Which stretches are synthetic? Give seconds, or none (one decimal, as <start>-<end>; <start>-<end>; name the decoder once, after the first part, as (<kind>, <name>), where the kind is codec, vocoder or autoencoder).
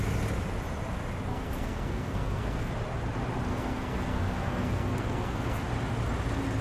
1.3-2.7 (codec, SNAC); 3.5-5.6